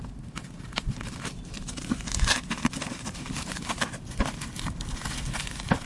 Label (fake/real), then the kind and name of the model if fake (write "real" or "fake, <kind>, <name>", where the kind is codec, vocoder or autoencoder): real